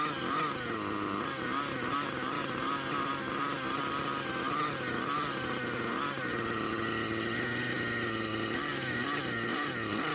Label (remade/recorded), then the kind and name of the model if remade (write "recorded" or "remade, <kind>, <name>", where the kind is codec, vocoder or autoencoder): recorded